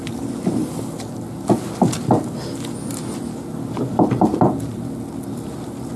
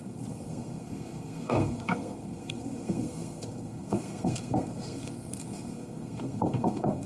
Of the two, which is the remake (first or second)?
second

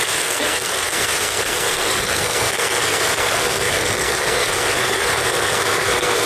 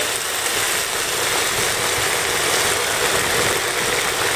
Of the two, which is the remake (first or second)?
first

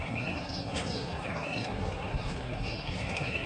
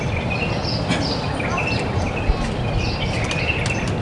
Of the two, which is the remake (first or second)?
first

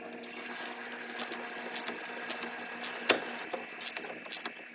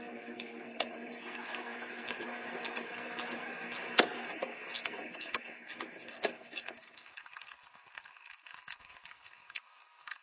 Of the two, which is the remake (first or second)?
second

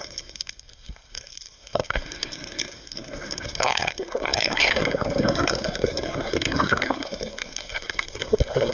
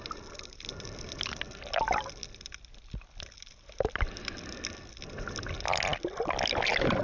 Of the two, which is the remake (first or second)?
first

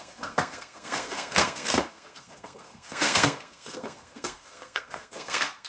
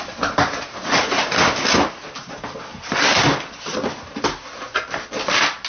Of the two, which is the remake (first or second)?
first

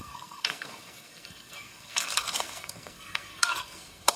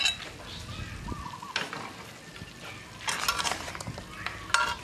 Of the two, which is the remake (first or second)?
first